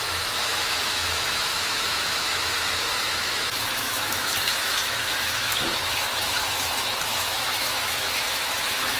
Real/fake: fake